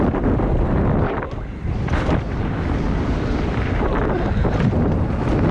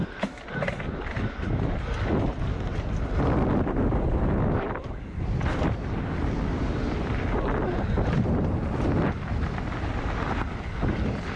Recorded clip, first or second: second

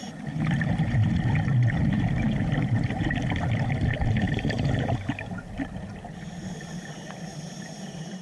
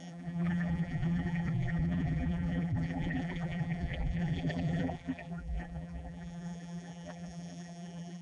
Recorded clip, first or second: first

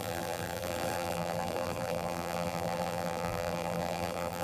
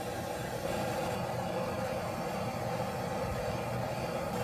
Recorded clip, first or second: second